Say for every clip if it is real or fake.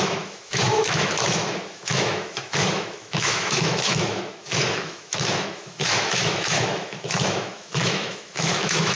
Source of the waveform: fake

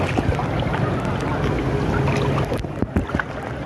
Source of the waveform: real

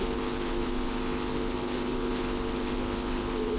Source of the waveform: fake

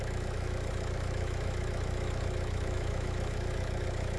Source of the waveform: fake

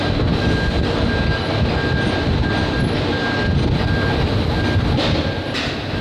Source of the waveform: real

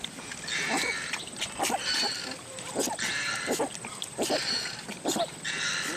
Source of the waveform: real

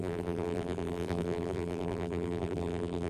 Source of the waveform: fake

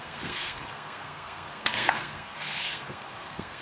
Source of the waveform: fake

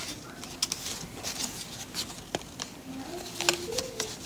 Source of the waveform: real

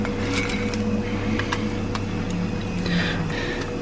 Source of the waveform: real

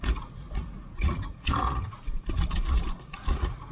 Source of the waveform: fake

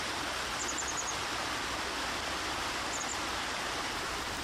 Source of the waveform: real